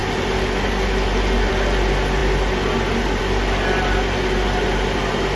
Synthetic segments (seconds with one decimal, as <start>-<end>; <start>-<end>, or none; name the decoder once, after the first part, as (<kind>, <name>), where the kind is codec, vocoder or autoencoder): none